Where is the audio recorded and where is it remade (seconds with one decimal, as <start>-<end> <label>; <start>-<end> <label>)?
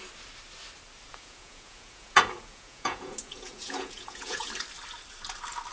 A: 0.0-1.1 recorded; 1.1-4.5 remade; 4.5-5.7 recorded